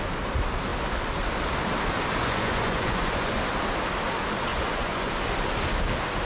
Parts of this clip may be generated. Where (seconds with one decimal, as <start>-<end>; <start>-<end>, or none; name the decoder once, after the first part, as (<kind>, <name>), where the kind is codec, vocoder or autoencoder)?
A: 2.2-3.4 (vocoder, Vocos); 4.5-5.1